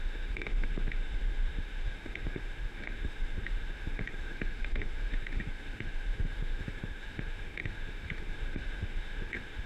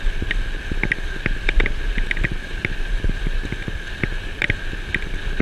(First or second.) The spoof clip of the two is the first